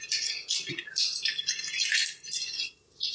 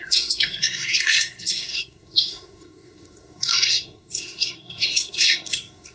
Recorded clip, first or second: first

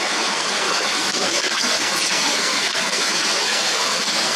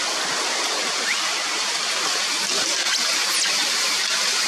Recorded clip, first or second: second